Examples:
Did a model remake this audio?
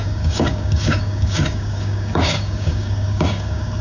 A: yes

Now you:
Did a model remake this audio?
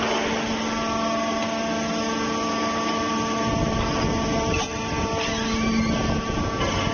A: no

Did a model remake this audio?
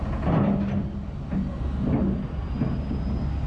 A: no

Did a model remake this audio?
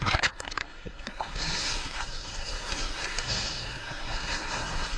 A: yes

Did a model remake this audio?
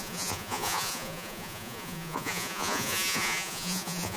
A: yes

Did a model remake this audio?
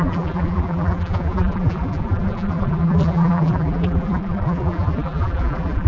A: yes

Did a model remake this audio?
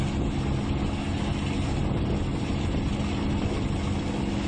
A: no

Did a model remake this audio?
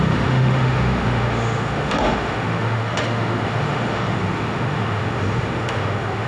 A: yes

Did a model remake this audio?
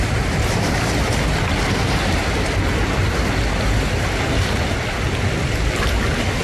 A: no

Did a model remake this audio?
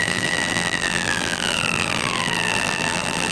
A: yes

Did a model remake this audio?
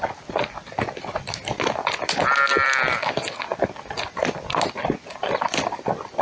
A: no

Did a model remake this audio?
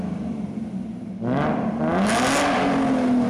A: no